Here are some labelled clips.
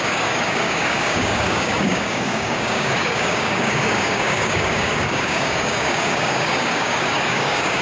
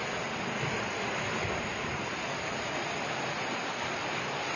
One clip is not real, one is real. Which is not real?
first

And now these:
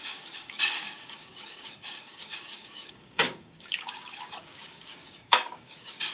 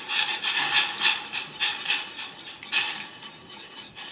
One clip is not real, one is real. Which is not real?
first